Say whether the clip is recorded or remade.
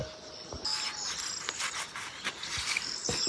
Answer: recorded